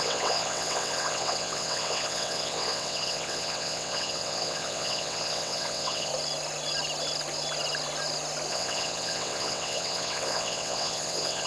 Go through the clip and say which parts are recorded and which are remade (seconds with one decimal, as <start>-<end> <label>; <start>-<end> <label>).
0.0-6.1 remade; 6.1-8.5 recorded; 8.5-11.5 remade